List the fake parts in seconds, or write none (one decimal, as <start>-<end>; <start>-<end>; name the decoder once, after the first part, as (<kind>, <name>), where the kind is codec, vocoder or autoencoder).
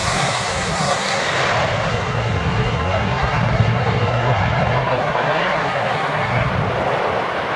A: 0.0-1.2 (codec, SNAC); 1.9-6.5